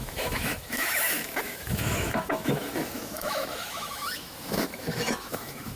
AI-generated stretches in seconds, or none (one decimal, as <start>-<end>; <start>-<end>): 0.0-5.8